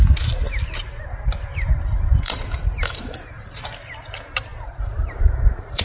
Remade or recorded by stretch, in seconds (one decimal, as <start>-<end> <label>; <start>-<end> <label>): 0.0-1.6 recorded; 1.6-3.7 remade; 3.7-4.5 recorded; 4.5-5.8 remade